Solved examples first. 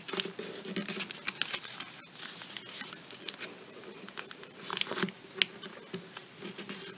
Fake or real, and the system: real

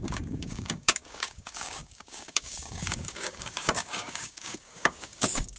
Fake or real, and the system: fake, codec, DAC